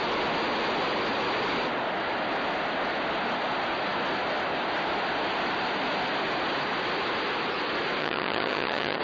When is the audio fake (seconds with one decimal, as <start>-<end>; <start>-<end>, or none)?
8.0-9.0

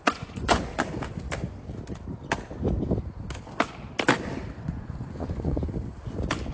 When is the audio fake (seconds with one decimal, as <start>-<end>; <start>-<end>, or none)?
0.0-0.7; 4.6-5.6